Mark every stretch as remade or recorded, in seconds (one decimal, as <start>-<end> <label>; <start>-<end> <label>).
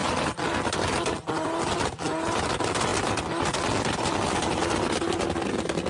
0.0-5.9 recorded